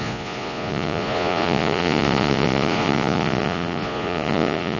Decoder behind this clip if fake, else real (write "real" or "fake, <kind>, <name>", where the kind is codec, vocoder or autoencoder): fake, vocoder, Vocos